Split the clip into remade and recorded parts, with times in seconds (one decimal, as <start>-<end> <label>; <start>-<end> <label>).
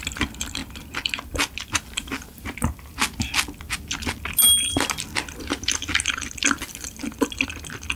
0.0-8.0 recorded